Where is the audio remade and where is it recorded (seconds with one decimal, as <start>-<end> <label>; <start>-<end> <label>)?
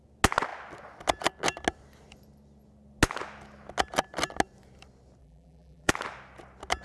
0.0-5.2 recorded; 5.2-5.9 remade; 5.9-6.8 recorded